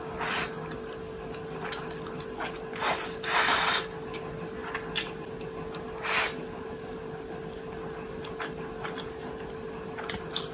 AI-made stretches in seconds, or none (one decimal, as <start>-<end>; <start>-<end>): none